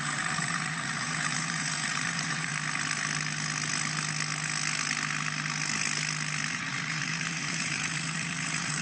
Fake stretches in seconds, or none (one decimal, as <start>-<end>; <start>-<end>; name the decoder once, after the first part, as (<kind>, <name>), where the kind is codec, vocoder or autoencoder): 0.0-2.5 (vocoder, Vocos); 6.5-8.8